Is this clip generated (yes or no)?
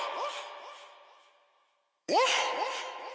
yes